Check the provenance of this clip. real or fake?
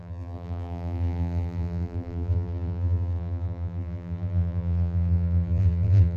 fake